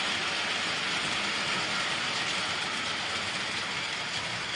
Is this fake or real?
real